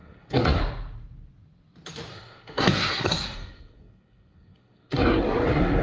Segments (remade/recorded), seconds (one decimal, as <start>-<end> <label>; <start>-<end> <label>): 0.0-0.6 remade; 0.6-2.1 recorded; 2.1-5.8 remade